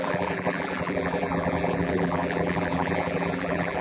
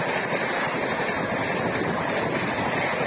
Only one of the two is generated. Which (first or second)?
first